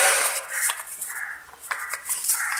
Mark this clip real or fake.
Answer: fake